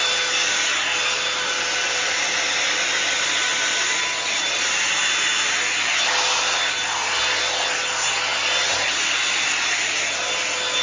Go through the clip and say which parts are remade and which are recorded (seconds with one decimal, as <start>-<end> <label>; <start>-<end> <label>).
0.0-10.8 recorded

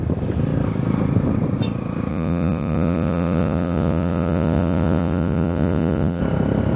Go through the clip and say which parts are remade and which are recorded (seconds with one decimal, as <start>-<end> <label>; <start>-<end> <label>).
0.0-2.1 recorded; 2.1-6.2 remade; 6.2-6.8 recorded

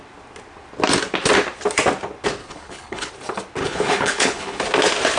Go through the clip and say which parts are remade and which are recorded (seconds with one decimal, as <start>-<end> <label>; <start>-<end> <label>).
0.0-2.4 recorded; 2.4-3.1 remade; 3.1-3.6 recorded; 3.6-4.6 remade; 4.6-5.2 recorded